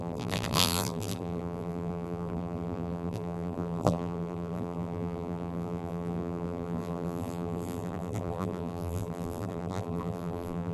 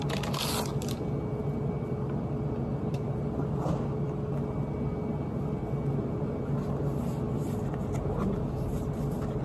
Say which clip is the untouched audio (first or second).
second